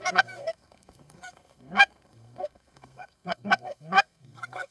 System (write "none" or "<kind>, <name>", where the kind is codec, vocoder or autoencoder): codec, SNAC